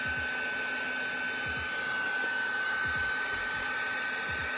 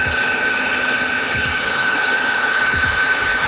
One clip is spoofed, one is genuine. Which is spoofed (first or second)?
second